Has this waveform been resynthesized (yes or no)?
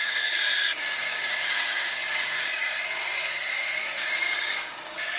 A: yes